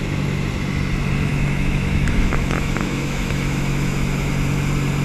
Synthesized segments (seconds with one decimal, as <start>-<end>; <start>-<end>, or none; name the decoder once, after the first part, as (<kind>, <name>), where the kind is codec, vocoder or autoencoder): 1.3-4.3 (autoencoder, DAC-VAE)

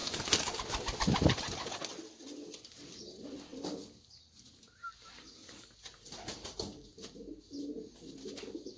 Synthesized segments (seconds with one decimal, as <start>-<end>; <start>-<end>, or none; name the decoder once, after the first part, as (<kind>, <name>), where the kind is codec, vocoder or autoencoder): 0.0-0.6 (codec, DAC)

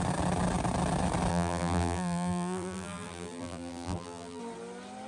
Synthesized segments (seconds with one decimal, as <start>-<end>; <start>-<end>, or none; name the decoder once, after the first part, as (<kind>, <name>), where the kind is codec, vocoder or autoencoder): 1.3-4.4 (vocoder, BigVGAN v2)

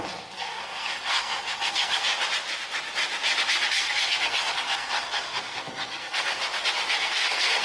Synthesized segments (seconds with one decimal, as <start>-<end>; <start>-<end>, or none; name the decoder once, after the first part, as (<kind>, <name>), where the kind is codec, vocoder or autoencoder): 0.0-2.1 (codec, SNAC); 3.7-6.4; 7.0-7.6